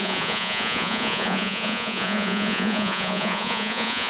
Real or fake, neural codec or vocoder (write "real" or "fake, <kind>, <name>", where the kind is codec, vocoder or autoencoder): fake, vocoder, Vocos